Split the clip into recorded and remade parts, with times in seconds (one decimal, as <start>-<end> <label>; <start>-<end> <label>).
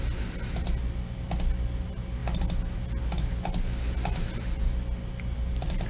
0.0-5.9 recorded